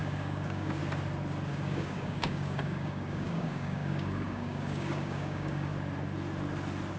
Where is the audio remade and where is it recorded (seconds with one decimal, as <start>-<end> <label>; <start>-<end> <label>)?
0.0-0.8 remade; 0.8-1.5 recorded; 1.5-5.7 remade; 5.7-7.0 recorded